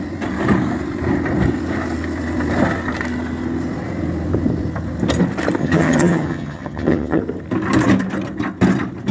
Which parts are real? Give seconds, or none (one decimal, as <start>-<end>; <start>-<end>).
0.0-5.6; 7.2-9.1